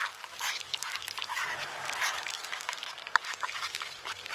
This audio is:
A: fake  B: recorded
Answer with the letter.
A